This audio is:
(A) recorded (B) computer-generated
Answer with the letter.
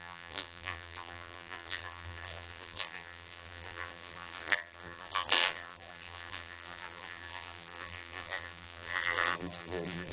B